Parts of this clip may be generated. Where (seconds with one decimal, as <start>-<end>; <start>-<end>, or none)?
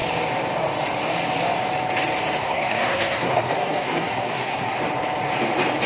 2.4-4.8